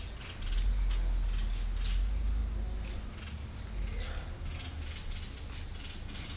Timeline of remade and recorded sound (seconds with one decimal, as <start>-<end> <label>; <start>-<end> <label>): 0.0-6.4 recorded